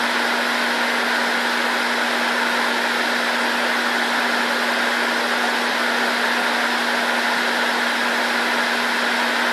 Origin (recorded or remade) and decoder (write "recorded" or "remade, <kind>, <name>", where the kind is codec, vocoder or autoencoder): recorded